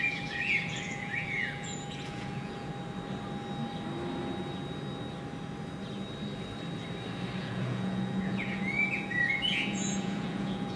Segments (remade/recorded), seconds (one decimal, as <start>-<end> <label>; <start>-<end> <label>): 0.0-2.7 remade; 2.7-7.4 recorded; 7.4-10.8 remade